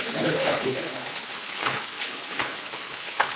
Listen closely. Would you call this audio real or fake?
fake